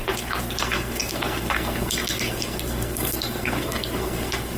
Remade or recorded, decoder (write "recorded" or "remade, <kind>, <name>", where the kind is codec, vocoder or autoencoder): remade, codec, SNAC